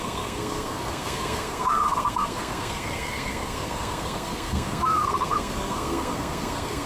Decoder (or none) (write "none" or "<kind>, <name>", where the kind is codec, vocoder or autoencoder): codec, SNAC